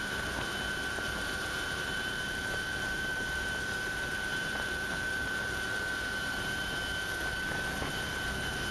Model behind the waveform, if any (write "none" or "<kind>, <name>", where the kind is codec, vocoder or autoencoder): vocoder, BigVGAN v2